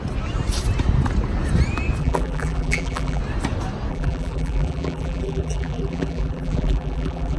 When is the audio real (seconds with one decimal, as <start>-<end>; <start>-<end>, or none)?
0.0-2.0; 3.2-3.9